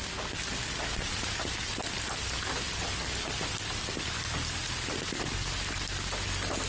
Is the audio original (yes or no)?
yes